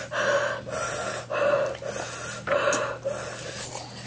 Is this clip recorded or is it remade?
recorded